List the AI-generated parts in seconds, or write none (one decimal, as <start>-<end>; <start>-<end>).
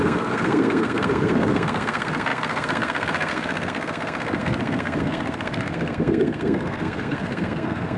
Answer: 0.0-8.0